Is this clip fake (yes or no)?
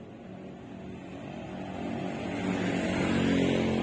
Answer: no